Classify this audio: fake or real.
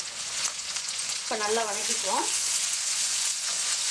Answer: fake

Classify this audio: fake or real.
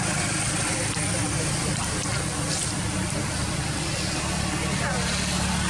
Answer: real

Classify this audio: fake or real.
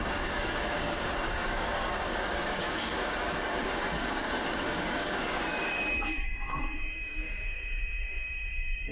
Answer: fake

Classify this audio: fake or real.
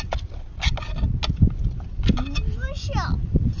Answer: real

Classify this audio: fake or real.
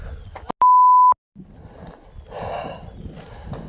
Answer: real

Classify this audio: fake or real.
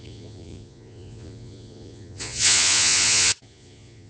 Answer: fake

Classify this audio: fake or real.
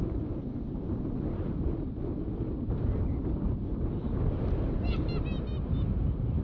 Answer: real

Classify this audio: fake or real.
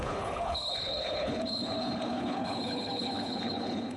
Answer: fake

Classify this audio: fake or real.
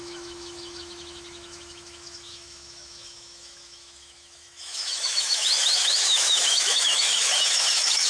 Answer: fake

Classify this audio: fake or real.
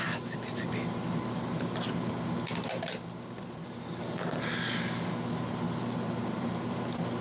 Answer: real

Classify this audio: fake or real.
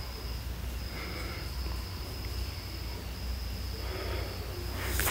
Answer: real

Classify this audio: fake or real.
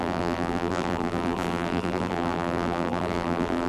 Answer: fake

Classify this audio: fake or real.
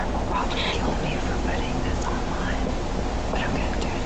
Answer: real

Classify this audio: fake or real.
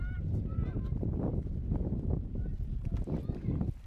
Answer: real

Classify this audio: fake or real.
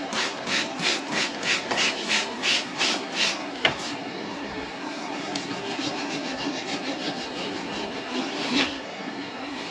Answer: fake